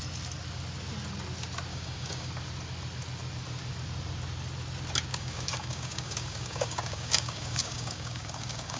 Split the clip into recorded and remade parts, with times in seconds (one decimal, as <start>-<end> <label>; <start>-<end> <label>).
0.0-1.7 recorded; 1.7-2.3 remade; 2.3-5.1 recorded; 5.1-8.8 remade